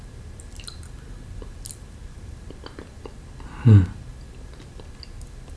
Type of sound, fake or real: fake